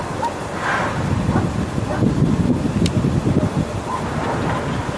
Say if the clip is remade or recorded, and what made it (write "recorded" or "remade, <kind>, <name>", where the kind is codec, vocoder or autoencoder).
recorded